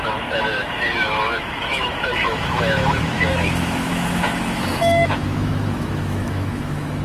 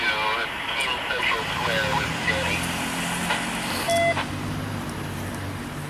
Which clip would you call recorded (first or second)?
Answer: second